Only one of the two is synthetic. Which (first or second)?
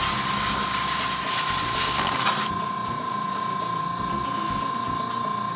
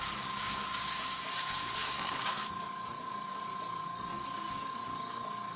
second